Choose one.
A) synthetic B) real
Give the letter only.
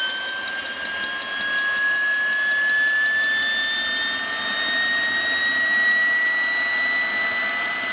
B